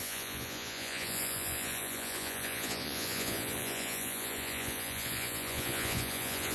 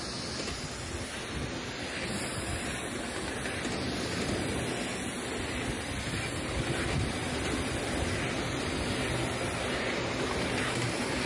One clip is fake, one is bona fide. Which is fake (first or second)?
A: first